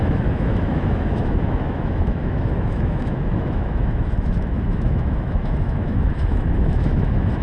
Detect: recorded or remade remade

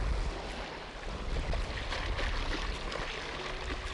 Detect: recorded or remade recorded